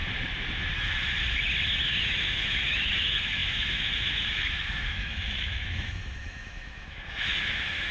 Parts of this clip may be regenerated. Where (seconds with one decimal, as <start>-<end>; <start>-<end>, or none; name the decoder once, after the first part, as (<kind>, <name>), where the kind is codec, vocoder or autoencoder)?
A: 2.0-7.9 (autoencoder, DAC-VAE)